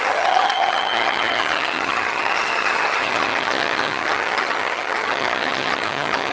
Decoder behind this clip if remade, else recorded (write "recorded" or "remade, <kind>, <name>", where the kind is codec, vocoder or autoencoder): remade, vocoder, HiFi-GAN